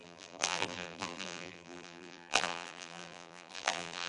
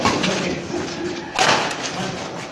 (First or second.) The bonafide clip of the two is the second